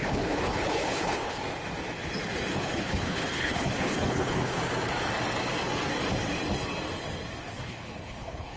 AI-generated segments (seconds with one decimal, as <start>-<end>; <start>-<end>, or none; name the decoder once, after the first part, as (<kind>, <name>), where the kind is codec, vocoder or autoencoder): 0.0-1.4 (codec, HILCodec); 2.5-4.6; 7.4-8.6